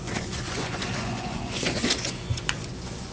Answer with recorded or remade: remade